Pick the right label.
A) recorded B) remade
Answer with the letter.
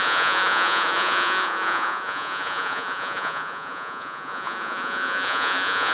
B